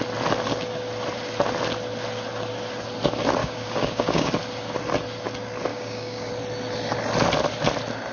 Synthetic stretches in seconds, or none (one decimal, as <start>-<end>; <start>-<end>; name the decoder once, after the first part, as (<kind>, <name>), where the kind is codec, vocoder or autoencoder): 3.4-4.3 (codec, DAC); 5.7-6.3